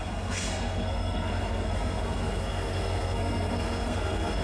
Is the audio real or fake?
fake